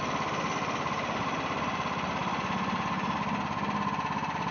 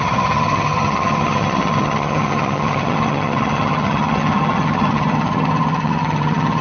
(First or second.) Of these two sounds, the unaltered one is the first